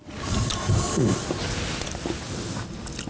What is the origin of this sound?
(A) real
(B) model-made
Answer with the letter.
A